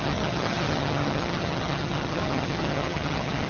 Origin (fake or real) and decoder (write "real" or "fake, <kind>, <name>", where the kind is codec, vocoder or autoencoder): fake, vocoder, HiFi-GAN